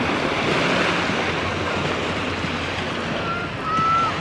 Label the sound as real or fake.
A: real